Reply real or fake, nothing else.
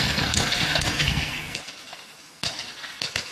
fake